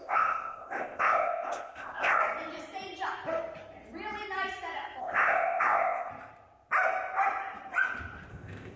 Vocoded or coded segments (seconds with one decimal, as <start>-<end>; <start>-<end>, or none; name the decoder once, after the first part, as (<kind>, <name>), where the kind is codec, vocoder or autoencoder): 0.0-2.2 (codec, ZipCodec); 5.0-6.1; 8.3-8.8